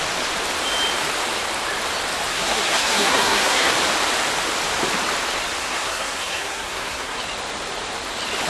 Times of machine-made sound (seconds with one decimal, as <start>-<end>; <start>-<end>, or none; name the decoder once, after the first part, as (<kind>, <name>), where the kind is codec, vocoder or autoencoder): 2.3-3.7 (codec, SNAC); 5.6-7.2